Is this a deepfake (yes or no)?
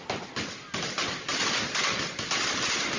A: no